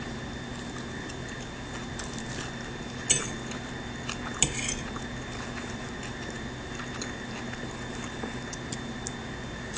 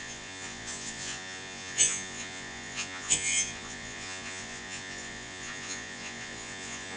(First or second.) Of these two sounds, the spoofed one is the second